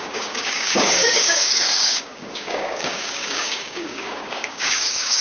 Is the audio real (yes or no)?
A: no